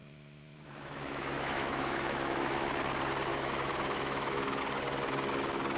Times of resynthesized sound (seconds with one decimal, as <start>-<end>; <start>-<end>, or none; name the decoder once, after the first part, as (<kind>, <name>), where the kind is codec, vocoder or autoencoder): 0.0-2.7 (autoencoder, DAC-VAE); 3.3-4.6